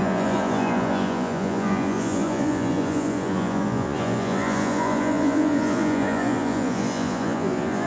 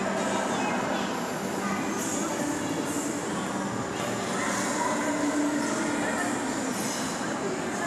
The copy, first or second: first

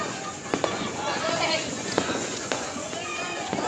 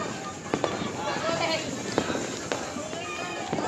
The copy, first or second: first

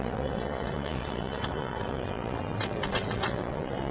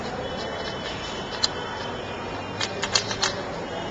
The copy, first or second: first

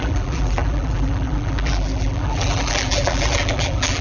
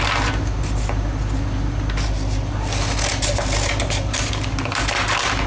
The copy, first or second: first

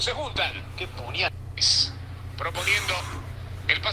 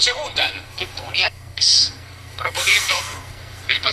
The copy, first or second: second